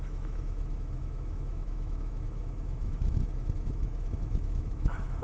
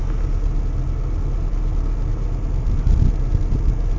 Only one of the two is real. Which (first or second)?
second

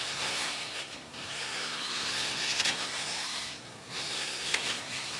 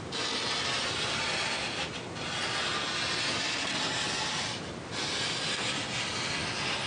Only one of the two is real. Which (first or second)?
second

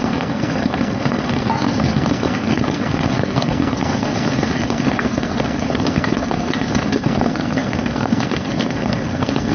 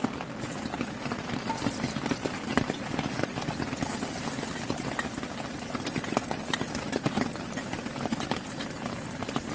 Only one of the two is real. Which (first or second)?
second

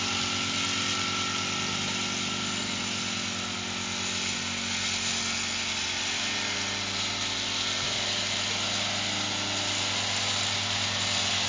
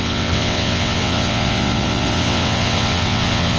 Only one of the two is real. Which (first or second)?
first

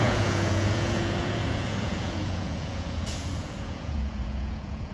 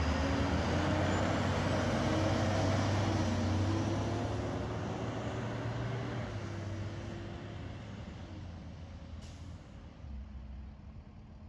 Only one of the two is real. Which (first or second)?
second